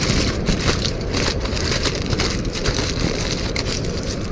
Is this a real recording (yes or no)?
no